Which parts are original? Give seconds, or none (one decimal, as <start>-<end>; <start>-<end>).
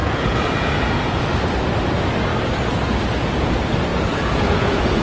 1.2-3.9